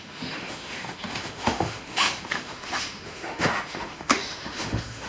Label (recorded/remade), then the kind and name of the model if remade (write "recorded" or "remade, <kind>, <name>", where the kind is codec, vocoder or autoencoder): remade, autoencoder, DAC-VAE